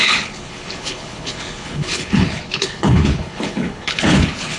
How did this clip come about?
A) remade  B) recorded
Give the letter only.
A